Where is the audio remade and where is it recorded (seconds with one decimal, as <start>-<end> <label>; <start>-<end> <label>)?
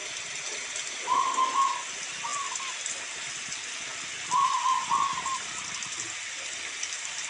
0.0-3.9 recorded; 3.9-7.3 remade